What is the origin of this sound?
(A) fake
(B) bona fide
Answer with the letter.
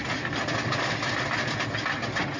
B